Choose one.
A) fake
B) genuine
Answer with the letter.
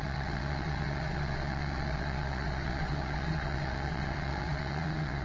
A